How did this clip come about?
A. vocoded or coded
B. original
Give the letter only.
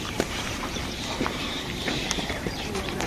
A